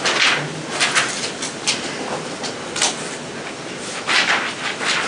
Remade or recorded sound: recorded